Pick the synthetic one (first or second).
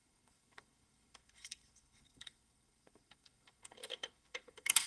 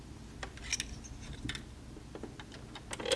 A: first